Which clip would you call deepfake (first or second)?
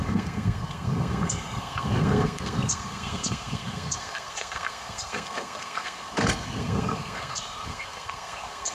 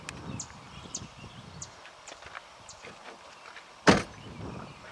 first